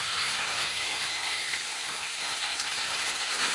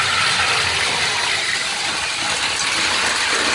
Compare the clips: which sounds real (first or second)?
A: second